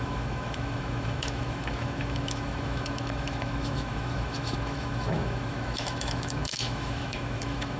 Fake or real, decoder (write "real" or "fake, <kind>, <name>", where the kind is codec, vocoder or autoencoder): fake, autoencoder, DAC-VAE